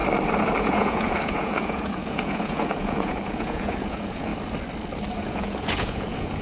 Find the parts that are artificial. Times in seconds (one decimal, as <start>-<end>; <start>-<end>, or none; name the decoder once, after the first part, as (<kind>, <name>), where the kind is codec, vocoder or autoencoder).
0.6-4.3 (vocoder, Vocos); 5.1-6.4